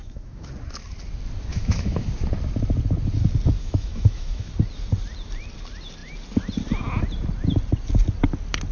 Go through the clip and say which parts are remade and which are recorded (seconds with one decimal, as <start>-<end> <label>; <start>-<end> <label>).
0.0-0.5 remade; 0.5-1.5 recorded; 1.5-2.1 remade; 2.1-3.6 recorded; 3.6-4.5 remade; 4.5-8.7 recorded